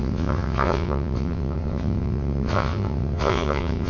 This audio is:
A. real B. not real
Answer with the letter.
B